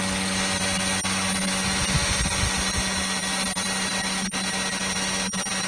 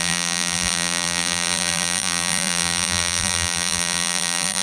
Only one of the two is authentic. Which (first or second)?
first